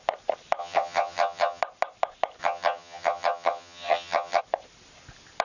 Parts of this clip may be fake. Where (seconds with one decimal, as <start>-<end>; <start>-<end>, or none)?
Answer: 0.6-1.6; 2.4-4.4